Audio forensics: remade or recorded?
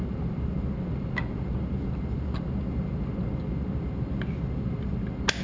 recorded